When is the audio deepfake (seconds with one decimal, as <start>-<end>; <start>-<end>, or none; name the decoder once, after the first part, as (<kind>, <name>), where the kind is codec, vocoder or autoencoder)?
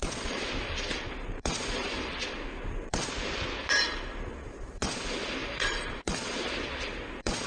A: 0.0-3.1 (vocoder, Vocos); 3.6-7.5